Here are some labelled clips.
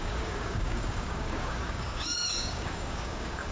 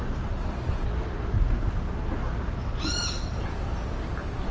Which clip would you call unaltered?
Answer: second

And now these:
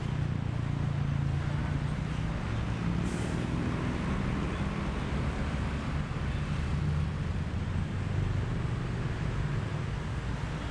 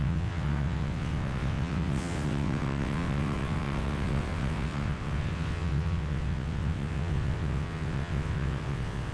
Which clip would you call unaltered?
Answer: first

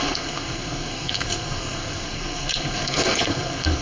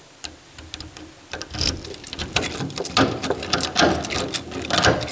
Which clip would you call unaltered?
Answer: second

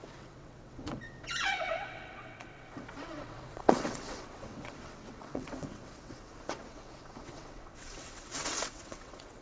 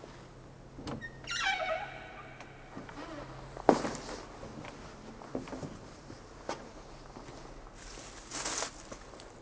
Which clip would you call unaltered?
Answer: second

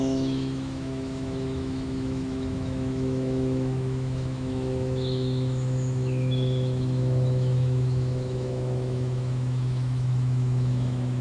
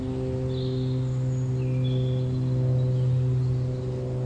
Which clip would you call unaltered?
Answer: second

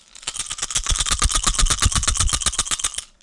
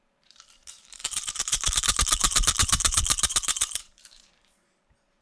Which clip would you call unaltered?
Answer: first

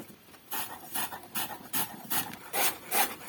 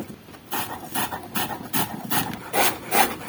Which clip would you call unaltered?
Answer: second